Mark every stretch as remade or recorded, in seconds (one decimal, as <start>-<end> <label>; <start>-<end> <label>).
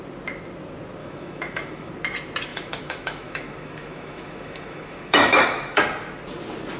0.0-1.0 recorded; 1.0-1.9 remade; 1.9-2.5 recorded; 2.5-5.8 remade; 5.8-6.8 recorded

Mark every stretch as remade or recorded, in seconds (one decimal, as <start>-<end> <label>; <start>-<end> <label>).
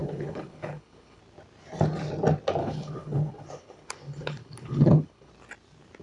0.0-1.2 remade; 1.2-2.6 recorded; 2.6-5.3 remade; 5.3-6.0 recorded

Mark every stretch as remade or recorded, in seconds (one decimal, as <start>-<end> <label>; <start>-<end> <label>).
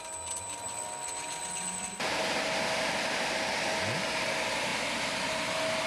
0.0-5.9 recorded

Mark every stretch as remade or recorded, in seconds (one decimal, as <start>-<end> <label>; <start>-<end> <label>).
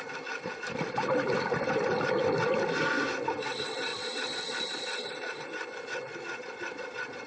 0.0-3.9 recorded; 3.9-5.4 remade; 5.4-6.1 recorded; 6.1-7.3 remade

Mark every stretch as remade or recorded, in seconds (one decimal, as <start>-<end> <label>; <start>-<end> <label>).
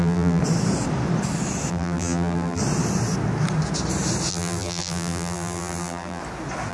0.0-0.4 remade; 0.4-1.7 recorded; 1.7-2.6 remade; 2.6-4.3 recorded; 4.3-6.2 remade; 6.2-6.7 recorded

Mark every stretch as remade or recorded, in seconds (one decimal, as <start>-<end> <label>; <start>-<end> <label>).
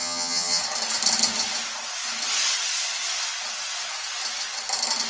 0.0-0.6 remade; 0.6-5.1 recorded